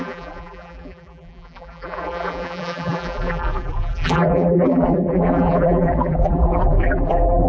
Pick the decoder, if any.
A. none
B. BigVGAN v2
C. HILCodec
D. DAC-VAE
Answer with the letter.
B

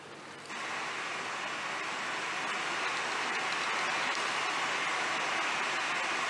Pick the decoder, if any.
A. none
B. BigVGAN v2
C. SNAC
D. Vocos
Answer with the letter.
A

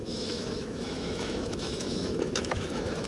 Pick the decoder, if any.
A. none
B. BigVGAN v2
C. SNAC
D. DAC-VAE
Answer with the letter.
D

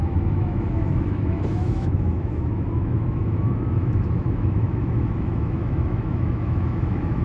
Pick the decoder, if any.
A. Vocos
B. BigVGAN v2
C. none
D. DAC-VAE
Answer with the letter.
D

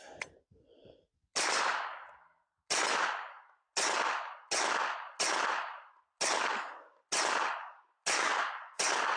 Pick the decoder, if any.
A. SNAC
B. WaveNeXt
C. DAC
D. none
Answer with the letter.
D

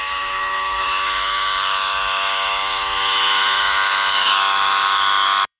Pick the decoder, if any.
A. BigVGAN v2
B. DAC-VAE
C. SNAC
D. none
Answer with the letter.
B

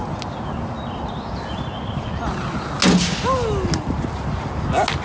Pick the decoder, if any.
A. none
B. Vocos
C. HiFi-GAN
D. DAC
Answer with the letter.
A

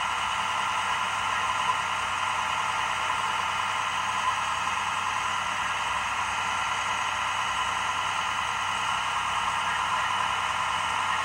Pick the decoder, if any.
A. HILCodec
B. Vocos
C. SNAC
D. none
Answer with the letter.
D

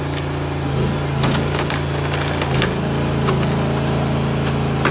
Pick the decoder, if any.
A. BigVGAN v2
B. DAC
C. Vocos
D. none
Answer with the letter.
D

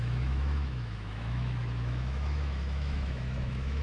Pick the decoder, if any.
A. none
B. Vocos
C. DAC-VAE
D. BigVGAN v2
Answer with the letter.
C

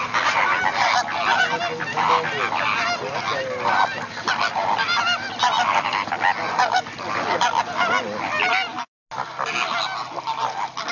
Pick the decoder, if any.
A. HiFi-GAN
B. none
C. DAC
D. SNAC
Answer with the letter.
B